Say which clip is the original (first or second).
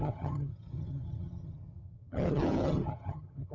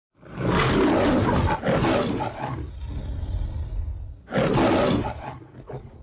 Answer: second